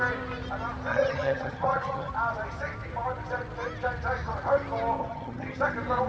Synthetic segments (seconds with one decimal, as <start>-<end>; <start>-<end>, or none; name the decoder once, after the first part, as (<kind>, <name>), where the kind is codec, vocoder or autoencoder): 0.9-2.1 (vocoder, HiFi-GAN); 5.0-5.6